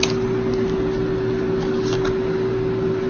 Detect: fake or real real